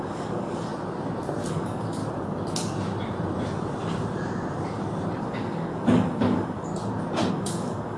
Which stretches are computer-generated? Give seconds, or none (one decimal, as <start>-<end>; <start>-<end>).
0.0-0.7; 1.5-2.0; 5.2-6.7; 7.3-8.0